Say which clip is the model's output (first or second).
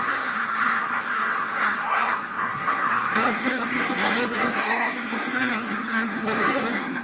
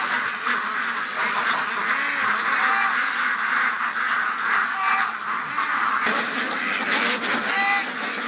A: first